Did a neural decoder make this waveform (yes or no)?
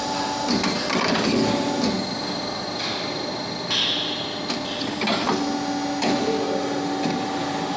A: no